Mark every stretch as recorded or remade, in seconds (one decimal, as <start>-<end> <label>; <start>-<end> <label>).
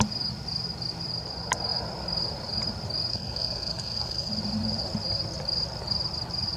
0.0-3.1 recorded; 3.1-4.3 remade; 4.3-6.6 recorded